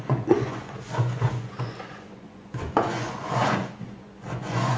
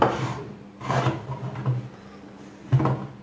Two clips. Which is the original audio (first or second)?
second